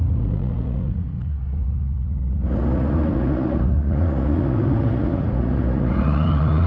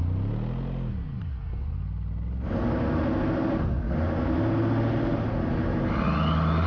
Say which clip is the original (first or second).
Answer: second